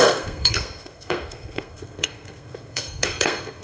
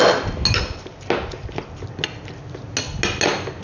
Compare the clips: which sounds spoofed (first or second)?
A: first